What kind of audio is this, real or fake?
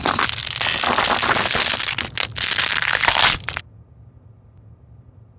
real